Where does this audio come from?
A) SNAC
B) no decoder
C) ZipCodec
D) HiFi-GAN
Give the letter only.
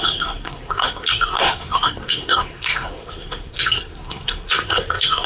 A